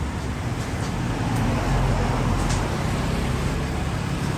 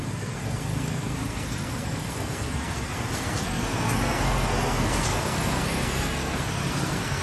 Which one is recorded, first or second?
first